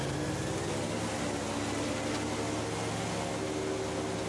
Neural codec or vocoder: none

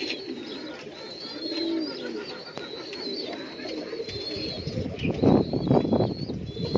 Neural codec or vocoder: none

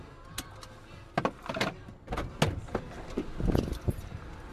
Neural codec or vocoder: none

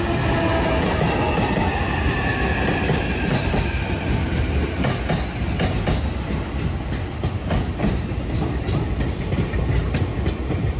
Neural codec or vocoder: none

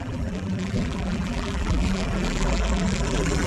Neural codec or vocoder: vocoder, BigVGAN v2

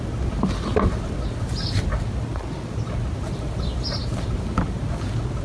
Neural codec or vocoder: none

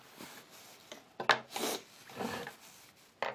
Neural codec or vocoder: none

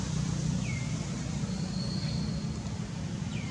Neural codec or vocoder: none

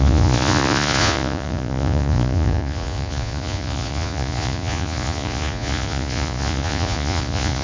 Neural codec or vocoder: vocoder, Vocos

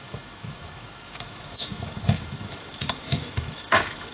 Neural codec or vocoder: autoencoder, DAC-VAE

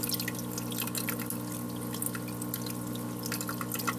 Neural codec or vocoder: none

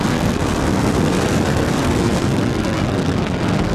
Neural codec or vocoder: codec, SNAC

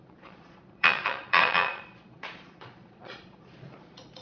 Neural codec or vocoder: vocoder, Vocos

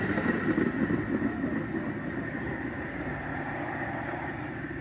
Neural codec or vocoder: none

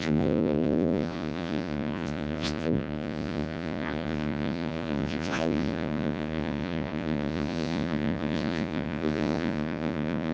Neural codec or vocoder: vocoder, Vocos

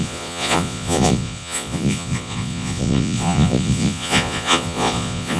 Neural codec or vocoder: vocoder, Vocos